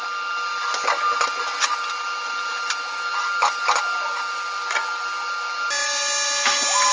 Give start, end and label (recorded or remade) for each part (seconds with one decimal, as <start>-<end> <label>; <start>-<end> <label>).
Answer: 0.0-6.9 recorded